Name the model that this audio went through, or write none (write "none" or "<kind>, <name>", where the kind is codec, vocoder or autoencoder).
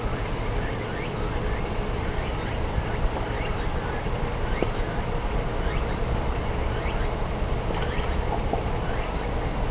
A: none